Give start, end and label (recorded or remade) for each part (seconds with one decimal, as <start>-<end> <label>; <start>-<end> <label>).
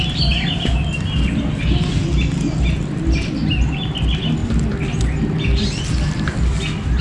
0.0-7.0 recorded